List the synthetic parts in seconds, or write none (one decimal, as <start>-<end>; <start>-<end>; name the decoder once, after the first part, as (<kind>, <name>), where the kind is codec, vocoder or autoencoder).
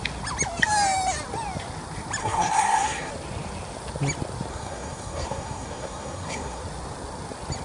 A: 2.2-3.1 (codec, SNAC); 4.5-6.6